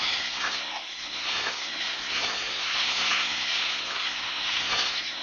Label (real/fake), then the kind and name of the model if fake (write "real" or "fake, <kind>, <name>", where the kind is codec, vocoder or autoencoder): fake, codec, SNAC